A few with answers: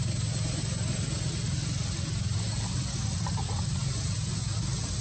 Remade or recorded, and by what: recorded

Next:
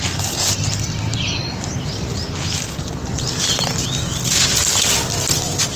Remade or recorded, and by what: recorded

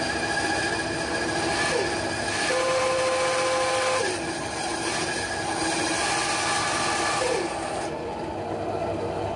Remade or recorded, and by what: recorded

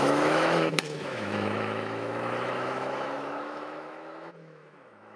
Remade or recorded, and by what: remade, autoencoder, DAC-VAE